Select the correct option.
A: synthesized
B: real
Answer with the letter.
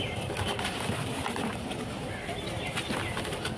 B